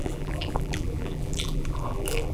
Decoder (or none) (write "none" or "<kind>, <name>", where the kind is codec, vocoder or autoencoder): vocoder, BigVGAN v2